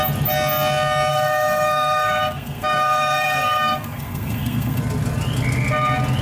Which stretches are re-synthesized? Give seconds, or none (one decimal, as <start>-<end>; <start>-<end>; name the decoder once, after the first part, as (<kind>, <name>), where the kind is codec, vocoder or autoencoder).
1.1-4.8 (codec, SNAC)